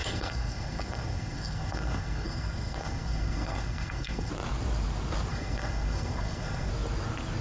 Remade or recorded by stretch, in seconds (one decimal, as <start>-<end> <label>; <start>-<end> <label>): 0.0-4.3 remade; 4.3-5.3 recorded; 5.3-6.7 remade; 6.7-7.4 recorded